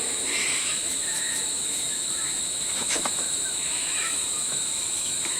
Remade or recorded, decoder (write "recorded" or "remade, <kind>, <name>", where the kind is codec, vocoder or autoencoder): remade, autoencoder, DAC-VAE